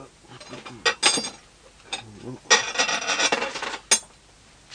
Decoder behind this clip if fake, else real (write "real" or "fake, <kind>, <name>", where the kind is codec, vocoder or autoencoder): real